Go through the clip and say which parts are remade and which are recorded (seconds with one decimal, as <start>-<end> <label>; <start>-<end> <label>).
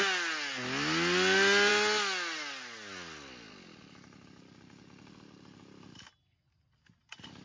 0.0-7.4 recorded